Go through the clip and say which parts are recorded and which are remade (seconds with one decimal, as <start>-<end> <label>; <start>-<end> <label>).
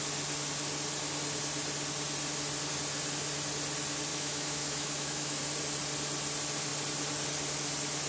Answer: 0.0-4.1 recorded; 4.1-5.4 remade; 5.4-8.1 recorded